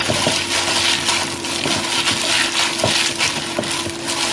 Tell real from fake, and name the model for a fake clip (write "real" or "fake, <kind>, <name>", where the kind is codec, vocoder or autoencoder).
real